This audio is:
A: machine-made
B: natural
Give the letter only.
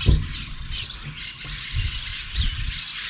B